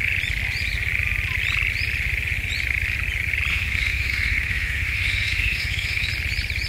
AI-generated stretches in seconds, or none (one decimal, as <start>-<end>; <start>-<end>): 3.5-6.1